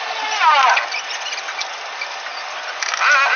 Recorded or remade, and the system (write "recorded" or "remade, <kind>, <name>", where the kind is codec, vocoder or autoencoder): recorded